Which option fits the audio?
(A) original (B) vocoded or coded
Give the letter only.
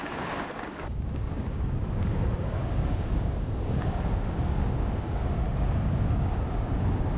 B